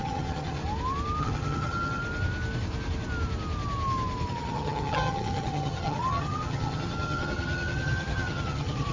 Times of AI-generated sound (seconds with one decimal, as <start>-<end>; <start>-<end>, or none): 0.0-0.6; 1.2-2.0; 4.3-8.9